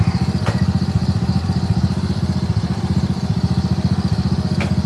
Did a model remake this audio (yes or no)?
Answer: no